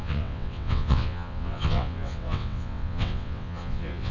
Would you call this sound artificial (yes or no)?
yes